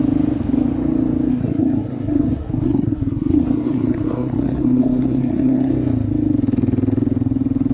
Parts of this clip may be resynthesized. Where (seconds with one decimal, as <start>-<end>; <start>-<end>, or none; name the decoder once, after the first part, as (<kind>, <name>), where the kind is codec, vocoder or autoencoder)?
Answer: 1.3-5.7 (codec, SNAC)